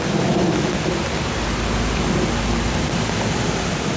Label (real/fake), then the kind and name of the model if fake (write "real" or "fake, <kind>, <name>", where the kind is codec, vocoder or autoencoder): real